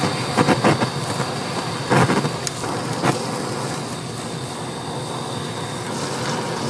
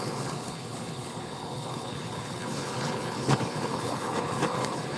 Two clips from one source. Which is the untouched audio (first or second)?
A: first